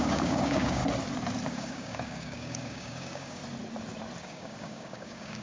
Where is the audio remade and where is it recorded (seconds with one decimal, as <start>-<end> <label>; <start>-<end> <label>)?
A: 0.0-0.8 remade; 0.8-1.5 recorded; 1.5-3.4 remade; 3.4-4.2 recorded; 4.2-5.4 remade